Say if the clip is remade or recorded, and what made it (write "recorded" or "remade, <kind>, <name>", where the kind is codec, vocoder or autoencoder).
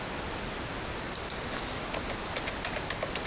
recorded